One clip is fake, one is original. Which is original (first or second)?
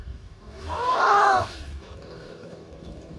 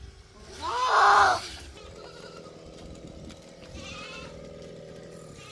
second